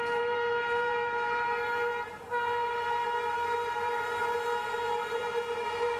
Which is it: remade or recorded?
remade